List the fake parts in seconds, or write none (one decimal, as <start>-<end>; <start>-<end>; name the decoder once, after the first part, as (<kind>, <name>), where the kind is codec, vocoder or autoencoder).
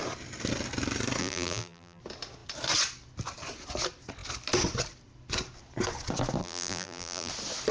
1.2-2.0 (vocoder, BigVGAN v2); 6.4-7.3